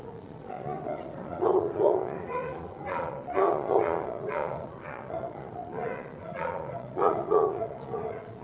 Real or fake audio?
fake